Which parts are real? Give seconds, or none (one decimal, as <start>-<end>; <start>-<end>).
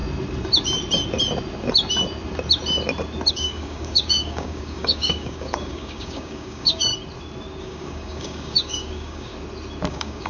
0.0-3.3; 6.9-7.6; 9.3-9.9